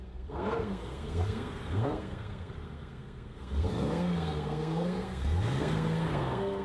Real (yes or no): no